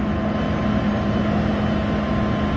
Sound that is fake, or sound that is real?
real